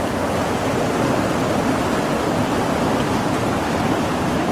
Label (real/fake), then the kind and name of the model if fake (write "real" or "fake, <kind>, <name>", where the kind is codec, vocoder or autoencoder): real